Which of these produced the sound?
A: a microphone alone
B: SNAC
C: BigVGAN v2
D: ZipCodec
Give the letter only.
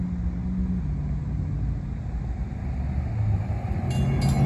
A